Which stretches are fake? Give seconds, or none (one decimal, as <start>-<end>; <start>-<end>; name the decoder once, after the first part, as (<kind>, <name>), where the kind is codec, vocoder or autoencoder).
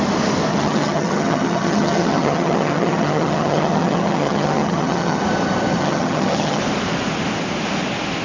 0.5-5.2 (vocoder, HiFi-GAN); 5.8-6.6